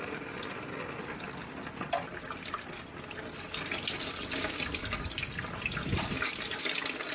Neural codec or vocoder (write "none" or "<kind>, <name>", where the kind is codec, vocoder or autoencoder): none